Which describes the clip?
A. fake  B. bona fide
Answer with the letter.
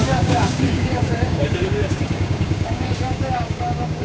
A